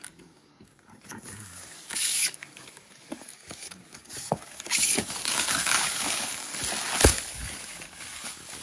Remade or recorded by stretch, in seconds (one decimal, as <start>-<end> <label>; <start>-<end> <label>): 0.0-6.5 remade; 6.5-7.1 recorded; 7.1-8.6 remade